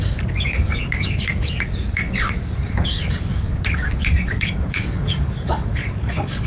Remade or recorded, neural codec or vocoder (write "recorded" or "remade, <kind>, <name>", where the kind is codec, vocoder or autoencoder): remade, codec, DAC